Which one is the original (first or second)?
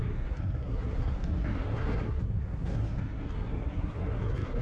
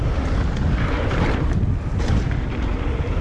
second